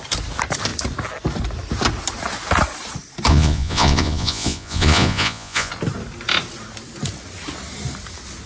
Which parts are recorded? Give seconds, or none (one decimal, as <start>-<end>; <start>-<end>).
0.0-3.3; 5.7-8.5

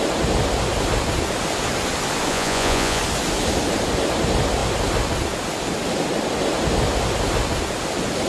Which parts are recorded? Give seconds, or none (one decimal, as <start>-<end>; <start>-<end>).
0.0-2.3; 3.0-8.3

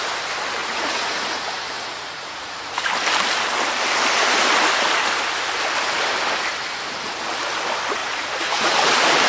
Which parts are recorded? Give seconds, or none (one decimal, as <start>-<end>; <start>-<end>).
0.0-0.6; 2.9-8.0; 8.7-9.3

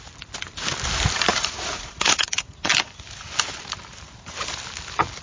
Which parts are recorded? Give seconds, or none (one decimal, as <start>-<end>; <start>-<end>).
0.0-1.3; 2.7-5.2

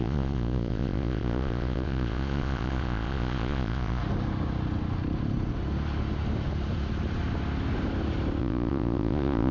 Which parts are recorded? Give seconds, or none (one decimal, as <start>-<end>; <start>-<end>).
4.0-8.4

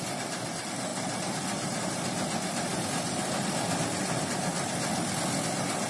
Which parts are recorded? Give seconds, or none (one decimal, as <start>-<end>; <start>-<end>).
0.0-5.9